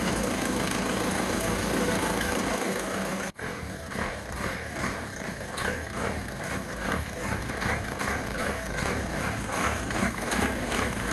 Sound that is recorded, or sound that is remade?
remade